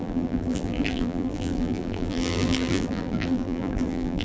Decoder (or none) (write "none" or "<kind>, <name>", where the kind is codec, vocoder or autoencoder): vocoder, BigVGAN v2